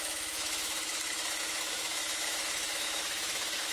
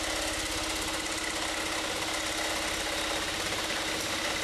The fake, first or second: first